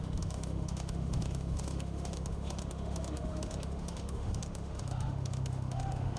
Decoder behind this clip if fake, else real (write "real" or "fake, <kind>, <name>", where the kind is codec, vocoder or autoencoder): fake, autoencoder, DAC-VAE